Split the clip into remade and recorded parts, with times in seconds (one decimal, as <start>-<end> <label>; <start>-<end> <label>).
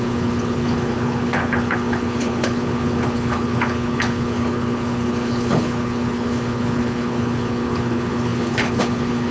0.0-9.3 remade